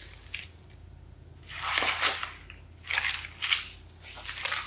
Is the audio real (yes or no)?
yes